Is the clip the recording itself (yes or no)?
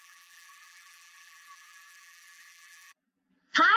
no